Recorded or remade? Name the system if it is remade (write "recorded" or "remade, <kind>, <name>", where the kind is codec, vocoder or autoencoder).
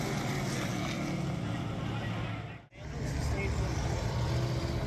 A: recorded